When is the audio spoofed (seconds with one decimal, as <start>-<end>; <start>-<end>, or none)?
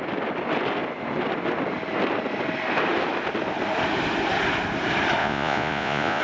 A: 5.2-6.2